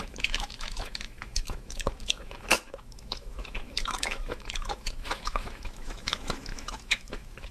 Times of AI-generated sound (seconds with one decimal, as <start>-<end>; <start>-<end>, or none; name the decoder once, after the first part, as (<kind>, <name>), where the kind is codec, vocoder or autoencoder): 0.0-7.5 (autoencoder, DAC-VAE)